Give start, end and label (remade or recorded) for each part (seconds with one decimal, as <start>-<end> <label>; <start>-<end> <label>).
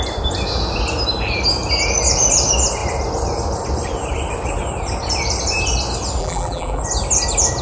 0.0-6.2 recorded; 6.2-6.8 remade; 6.8-7.6 recorded